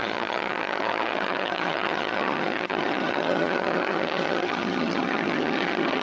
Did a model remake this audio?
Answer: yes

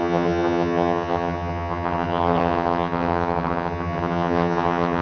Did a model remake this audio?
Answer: yes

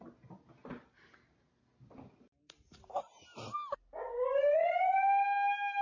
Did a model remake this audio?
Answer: no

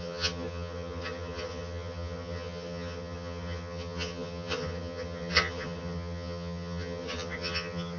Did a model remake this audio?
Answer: yes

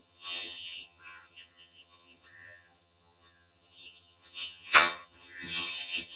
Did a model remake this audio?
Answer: yes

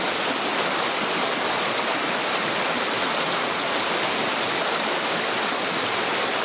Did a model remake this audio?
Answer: no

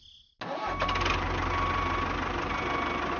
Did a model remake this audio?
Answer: no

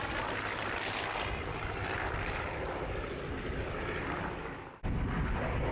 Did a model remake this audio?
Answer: no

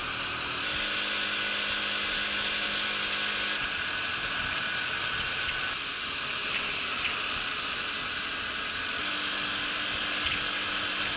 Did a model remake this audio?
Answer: no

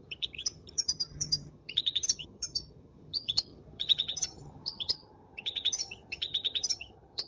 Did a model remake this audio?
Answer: yes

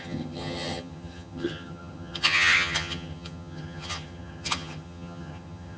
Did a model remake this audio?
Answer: yes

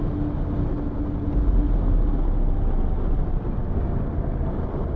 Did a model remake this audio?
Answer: no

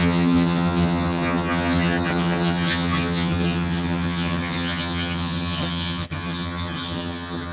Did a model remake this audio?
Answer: yes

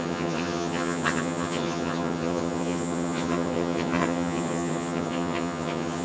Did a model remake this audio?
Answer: yes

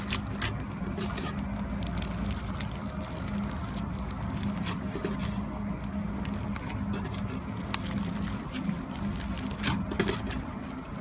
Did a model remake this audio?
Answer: no